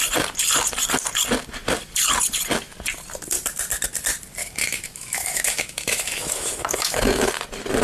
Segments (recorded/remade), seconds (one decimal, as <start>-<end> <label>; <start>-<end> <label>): 0.0-4.4 recorded; 4.4-7.3 remade; 7.3-7.8 recorded